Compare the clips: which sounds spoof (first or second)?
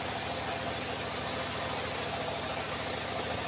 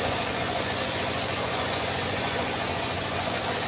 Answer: second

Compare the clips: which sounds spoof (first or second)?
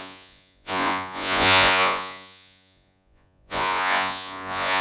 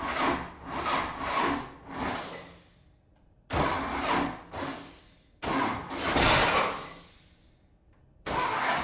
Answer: first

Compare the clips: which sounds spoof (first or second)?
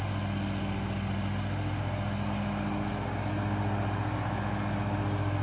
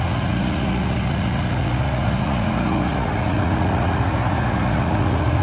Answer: second